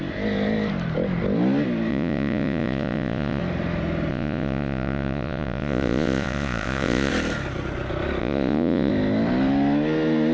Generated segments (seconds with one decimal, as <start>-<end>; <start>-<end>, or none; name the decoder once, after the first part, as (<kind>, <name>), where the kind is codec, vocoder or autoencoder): 1.9-3.4 (vocoder, Vocos); 4.1-7.1; 8.2-8.9